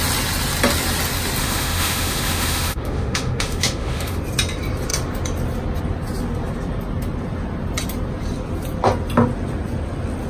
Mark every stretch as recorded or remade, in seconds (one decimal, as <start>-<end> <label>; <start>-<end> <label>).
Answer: 0.0-1.4 recorded; 1.4-4.2 remade; 4.2-10.3 recorded